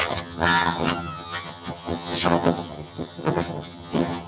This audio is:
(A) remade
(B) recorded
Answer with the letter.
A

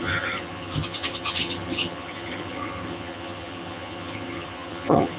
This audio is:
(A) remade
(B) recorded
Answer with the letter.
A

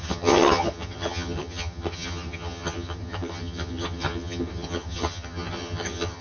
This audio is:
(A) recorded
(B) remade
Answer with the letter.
B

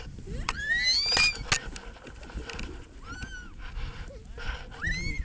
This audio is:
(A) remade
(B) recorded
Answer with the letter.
B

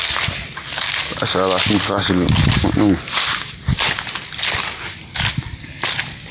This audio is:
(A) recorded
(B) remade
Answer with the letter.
A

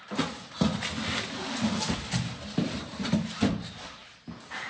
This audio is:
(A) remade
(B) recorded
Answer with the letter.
B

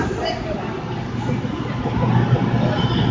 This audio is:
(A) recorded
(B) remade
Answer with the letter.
A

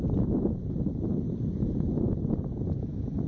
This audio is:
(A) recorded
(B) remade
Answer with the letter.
A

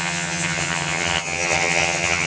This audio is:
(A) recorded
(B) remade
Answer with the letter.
B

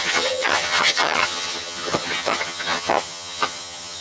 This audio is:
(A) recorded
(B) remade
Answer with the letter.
B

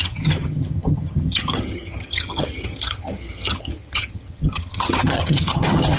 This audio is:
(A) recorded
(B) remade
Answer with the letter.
B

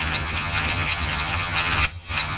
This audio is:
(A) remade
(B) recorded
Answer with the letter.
A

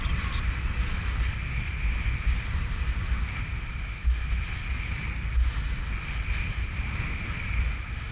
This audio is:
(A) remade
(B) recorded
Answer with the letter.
B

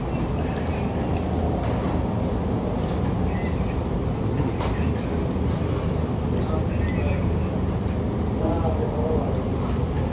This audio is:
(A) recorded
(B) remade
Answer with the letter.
A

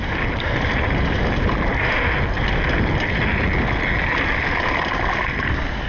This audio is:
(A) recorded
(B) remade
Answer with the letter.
A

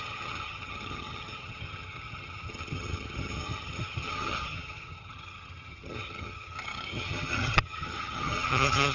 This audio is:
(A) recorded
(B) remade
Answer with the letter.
B